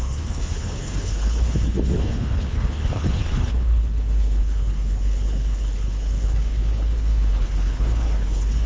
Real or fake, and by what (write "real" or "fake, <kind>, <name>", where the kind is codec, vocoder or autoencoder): fake, codec, HILCodec